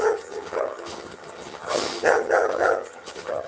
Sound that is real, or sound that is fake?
fake